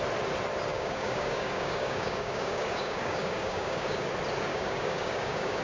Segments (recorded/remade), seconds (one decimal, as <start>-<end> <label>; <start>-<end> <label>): 0.0-0.7 recorded; 0.7-4.1 remade; 4.1-4.5 recorded; 4.5-5.6 remade